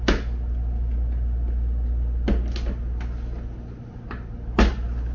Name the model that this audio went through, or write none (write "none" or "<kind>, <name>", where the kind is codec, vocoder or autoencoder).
none